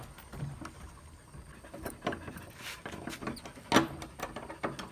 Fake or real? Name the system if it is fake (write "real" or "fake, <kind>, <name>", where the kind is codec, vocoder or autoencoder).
real